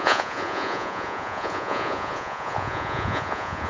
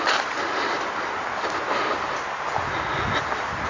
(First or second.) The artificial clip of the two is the first